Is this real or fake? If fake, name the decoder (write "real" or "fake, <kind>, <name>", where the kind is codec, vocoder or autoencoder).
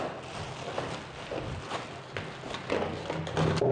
real